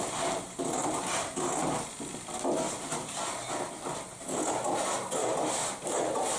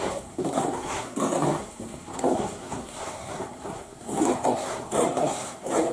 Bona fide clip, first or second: first